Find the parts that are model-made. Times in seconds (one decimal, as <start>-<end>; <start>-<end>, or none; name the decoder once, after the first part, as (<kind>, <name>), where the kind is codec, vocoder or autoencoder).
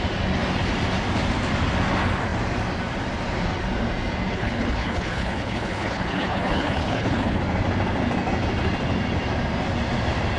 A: 4.3-7.4 (codec, HILCodec)